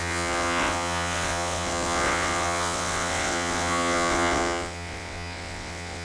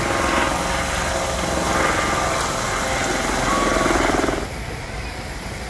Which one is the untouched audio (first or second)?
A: second